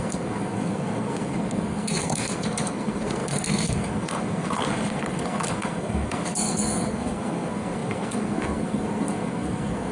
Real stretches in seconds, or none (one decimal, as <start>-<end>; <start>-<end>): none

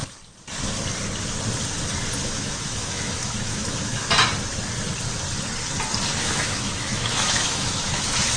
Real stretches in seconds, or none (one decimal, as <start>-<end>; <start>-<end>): 0.0-2.2; 4.0-6.2; 8.0-8.4

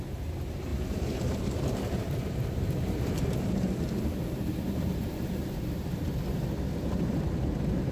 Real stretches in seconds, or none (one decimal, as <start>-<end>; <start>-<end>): 0.0-0.7; 5.4-6.7; 7.2-7.9

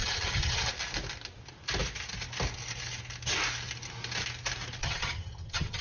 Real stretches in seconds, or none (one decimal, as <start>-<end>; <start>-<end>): 0.7-4.8